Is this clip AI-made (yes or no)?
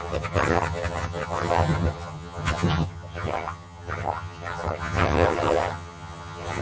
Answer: yes